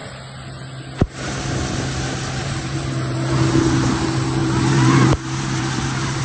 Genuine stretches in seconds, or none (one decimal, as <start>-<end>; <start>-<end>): 0.0-2.4; 3.5-4.4